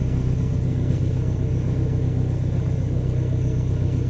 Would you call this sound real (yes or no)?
no